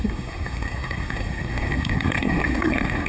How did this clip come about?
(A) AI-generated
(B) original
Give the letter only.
A